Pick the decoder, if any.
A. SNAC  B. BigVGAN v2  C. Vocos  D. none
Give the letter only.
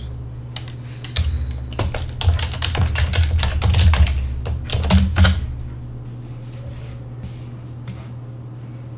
D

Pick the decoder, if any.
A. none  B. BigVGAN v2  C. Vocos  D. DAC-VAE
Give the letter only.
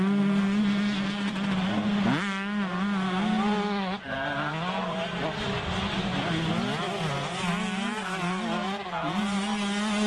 A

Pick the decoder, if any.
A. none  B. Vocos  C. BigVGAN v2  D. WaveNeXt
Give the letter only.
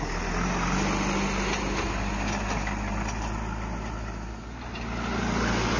A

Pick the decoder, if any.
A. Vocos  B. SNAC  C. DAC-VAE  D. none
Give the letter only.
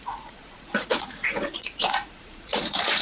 A